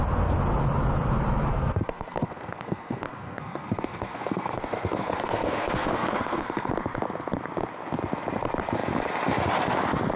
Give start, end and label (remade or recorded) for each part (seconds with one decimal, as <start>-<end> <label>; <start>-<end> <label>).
0.0-1.5 recorded; 1.5-6.7 remade; 6.7-10.2 recorded